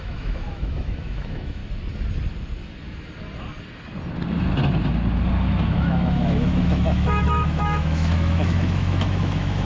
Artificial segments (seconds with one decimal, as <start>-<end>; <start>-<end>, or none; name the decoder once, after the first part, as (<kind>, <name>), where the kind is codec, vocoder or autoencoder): 0.0-1.6 (autoencoder, DAC-VAE); 5.6-9.6